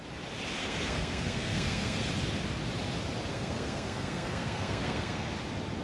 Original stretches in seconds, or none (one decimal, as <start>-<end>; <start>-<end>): 0.0-0.6; 2.1-3.3; 5.3-5.8